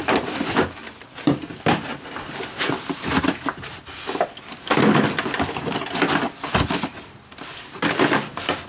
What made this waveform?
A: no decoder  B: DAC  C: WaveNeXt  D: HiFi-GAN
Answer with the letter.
A